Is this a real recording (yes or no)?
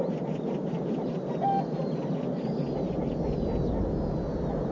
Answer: yes